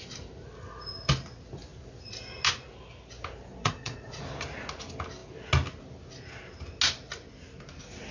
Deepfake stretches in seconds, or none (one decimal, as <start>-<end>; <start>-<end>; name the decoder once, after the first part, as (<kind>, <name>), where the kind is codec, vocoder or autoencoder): 3.6-4.2 (vocoder, Vocos)